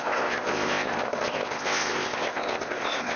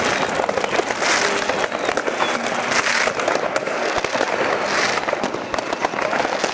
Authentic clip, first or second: second